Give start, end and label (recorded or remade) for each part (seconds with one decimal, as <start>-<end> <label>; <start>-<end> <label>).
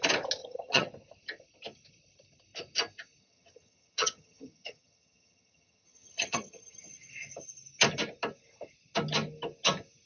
0.0-0.4 recorded; 0.4-0.9 remade; 0.9-3.2 recorded; 3.2-6.9 remade; 6.9-10.1 recorded